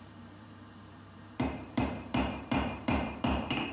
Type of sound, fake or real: fake